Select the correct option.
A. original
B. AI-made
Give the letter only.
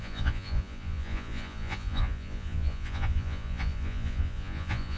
B